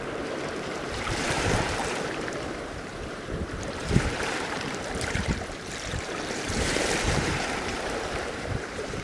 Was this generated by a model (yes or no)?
yes